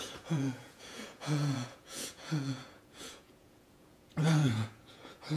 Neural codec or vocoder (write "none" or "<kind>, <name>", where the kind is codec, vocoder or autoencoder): vocoder, Vocos